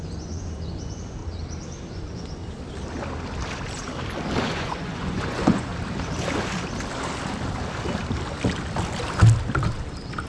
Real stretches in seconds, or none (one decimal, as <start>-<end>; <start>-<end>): 1.2-1.9; 2.4-4.4; 5.7-10.3